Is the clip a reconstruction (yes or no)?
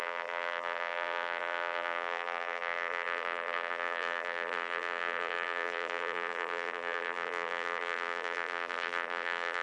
yes